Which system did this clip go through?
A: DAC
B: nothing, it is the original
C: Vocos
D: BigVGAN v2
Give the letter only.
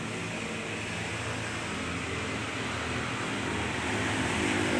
B